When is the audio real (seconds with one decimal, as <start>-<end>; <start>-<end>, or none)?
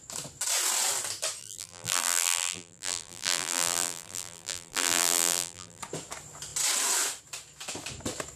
0.0-1.4; 5.8-8.4